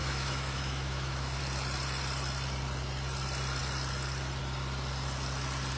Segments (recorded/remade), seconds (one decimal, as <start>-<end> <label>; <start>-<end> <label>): 0.0-1.4 remade; 1.4-5.8 recorded